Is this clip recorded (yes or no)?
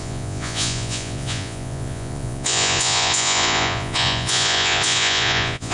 no